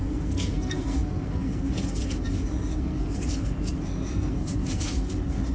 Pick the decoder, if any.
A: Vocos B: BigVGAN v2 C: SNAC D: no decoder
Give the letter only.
C